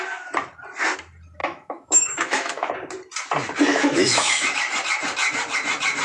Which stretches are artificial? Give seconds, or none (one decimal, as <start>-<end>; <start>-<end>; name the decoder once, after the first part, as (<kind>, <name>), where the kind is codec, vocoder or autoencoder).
1.4-2.7 (autoencoder, DAC-VAE); 3.7-4.6